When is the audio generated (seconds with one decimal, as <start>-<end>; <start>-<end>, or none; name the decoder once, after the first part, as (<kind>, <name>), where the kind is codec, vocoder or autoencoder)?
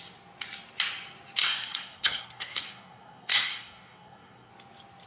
1.4-4.5 (codec, SNAC)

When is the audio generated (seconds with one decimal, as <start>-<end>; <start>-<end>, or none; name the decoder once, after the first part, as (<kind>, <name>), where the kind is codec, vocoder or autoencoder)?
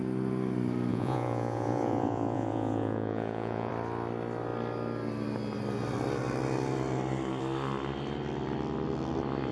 0.9-3.7 (vocoder, Vocos)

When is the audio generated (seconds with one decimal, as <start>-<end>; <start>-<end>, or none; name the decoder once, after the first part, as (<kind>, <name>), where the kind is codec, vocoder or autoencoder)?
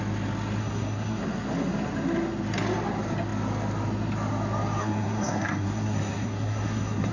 0.6-1.2 (codec, SNAC); 4.8-7.1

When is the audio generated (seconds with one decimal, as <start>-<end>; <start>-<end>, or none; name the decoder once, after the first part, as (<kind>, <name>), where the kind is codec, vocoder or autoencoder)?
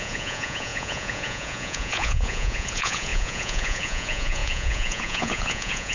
0.0-5.9 (vocoder, Vocos)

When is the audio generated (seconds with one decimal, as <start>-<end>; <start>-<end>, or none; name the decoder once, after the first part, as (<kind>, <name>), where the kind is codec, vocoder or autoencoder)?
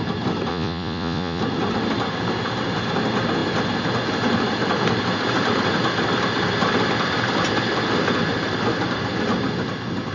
0.5-1.4 (vocoder, Vocos)